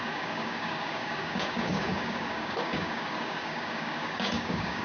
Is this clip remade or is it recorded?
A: remade